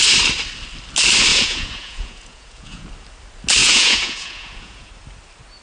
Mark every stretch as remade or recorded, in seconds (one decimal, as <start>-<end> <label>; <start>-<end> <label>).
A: 0.0-1.3 recorded; 1.3-2.9 remade; 2.9-3.6 recorded; 3.6-4.9 remade; 4.9-5.6 recorded